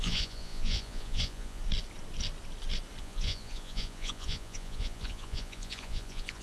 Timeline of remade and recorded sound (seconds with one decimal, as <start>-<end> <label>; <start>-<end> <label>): 0.0-1.6 remade; 1.6-3.0 recorded; 3.0-6.4 remade